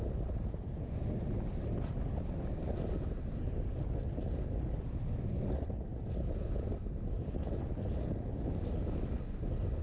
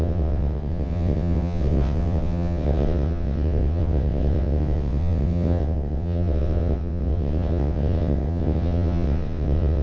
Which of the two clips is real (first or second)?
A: first